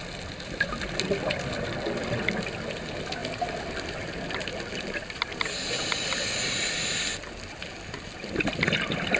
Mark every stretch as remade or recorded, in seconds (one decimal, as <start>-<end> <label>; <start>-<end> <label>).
0.0-9.2 recorded